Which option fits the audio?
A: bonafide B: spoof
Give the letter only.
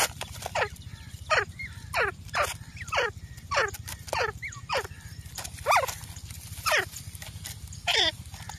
B